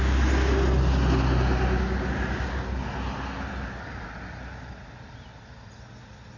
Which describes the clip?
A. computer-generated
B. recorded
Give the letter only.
B